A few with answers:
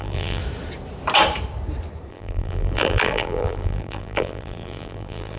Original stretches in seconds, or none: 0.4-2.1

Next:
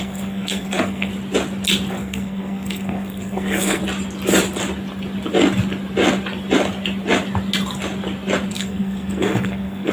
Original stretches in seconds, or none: 1.1-1.9; 3.8-8.5

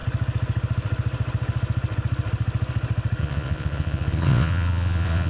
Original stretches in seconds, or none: 0.0-3.2

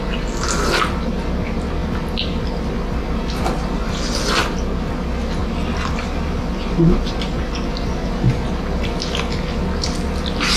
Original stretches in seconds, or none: 0.0-10.6